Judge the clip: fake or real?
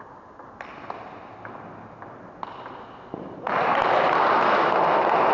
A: real